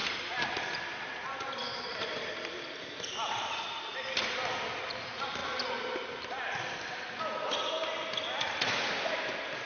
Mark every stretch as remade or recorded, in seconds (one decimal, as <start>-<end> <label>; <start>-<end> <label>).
0.0-3.6 remade; 3.6-9.7 recorded